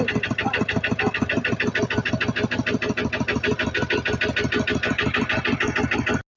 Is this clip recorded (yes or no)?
yes